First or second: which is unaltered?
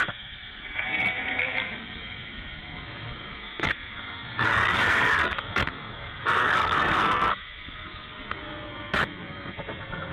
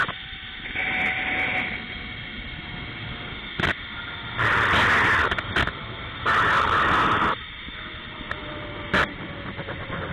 second